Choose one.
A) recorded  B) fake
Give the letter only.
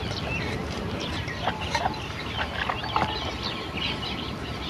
A